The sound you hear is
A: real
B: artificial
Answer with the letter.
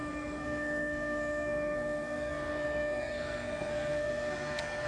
B